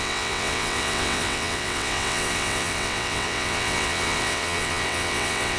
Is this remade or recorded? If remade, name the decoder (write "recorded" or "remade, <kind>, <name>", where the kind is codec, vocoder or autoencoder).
remade, vocoder, WaveNeXt